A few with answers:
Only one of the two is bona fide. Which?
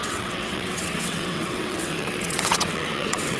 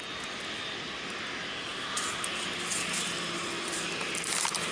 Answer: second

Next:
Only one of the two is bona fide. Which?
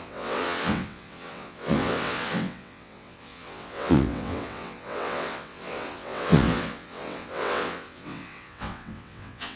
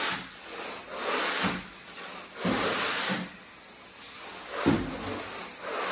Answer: second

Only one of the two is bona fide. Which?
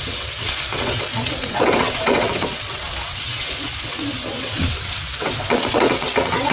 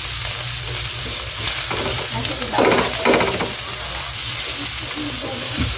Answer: second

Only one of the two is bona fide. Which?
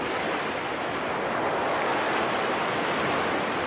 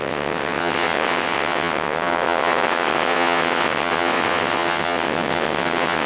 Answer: first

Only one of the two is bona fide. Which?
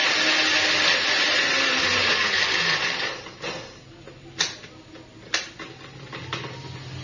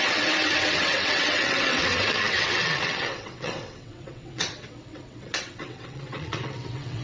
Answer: first